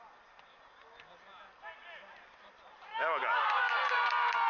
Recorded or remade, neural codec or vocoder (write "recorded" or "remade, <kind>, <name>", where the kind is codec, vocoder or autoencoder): recorded